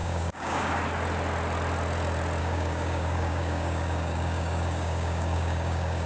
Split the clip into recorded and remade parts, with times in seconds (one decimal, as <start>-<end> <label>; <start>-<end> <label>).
0.0-0.8 remade; 0.8-2.4 recorded; 2.4-6.1 remade